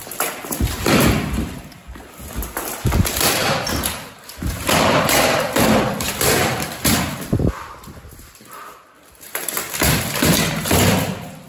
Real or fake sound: fake